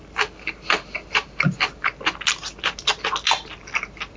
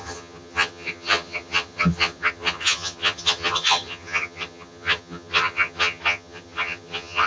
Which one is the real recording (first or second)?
first